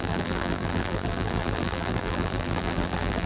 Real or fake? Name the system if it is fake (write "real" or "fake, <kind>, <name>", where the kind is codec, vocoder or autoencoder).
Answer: fake, vocoder, BigVGAN v2